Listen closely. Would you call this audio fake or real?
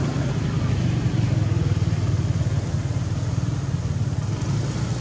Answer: real